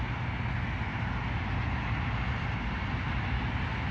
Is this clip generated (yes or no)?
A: no